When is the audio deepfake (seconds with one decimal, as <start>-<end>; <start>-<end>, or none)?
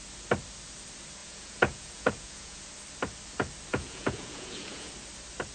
1.2-2.7; 3.7-4.9